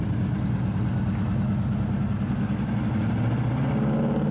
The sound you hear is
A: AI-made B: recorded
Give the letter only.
B